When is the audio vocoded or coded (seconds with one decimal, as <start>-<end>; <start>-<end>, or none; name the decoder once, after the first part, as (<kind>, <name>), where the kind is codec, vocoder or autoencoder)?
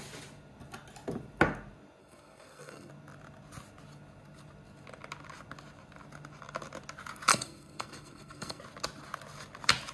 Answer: 2.0-2.9 (codec, SNAC); 7.3-8.6